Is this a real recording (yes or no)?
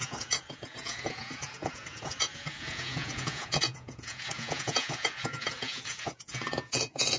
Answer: no